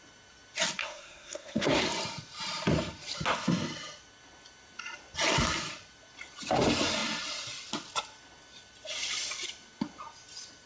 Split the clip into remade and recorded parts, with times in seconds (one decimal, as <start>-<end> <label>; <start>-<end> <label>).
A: 0.0-0.8 recorded; 0.8-1.8 remade; 1.8-10.7 recorded